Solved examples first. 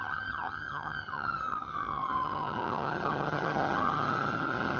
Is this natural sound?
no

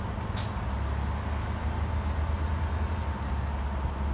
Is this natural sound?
yes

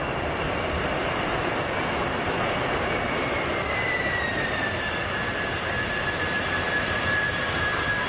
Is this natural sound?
no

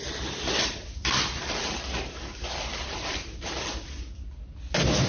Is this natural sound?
yes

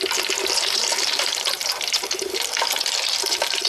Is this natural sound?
no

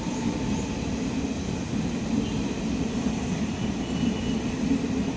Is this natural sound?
yes